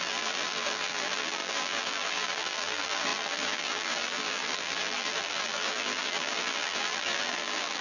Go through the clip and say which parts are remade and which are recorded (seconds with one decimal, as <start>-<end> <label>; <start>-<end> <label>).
0.0-7.8 remade